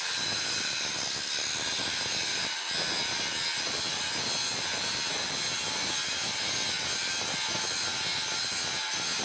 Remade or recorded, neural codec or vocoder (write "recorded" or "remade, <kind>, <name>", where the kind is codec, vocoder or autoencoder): recorded